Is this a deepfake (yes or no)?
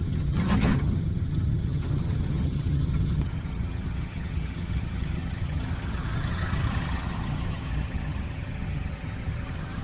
yes